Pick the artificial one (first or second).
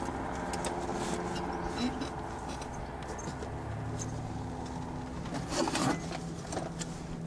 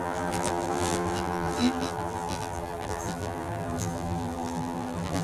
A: second